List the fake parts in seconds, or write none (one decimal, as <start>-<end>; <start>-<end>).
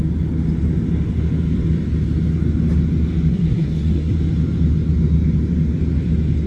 3.3-4.2